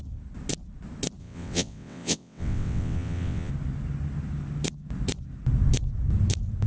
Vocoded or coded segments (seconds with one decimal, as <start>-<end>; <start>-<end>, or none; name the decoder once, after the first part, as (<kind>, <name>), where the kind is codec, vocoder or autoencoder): 1.2-3.5 (vocoder, WaveNeXt)